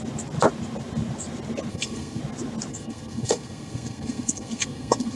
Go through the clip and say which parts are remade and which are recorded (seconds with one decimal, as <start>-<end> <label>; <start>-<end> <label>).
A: 0.0-1.7 recorded; 1.7-2.2 remade; 2.2-2.7 recorded; 2.7-5.2 remade